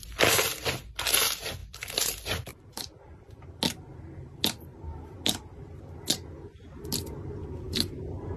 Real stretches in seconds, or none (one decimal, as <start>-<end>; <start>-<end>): 0.0-1.6; 2.1-2.5; 3.5-4.7; 6.4-8.4